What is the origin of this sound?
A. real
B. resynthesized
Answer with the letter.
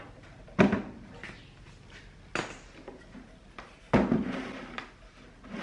A